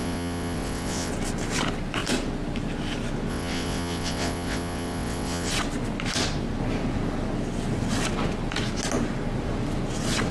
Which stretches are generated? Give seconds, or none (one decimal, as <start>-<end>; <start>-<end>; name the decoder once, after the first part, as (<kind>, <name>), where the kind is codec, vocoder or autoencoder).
0.0-1.1 (vocoder, WaveNeXt); 3.3-5.5